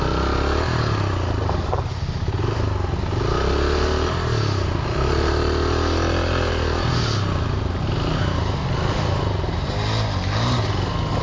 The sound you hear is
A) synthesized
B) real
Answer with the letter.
B